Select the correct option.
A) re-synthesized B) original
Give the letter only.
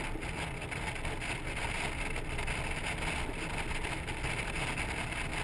B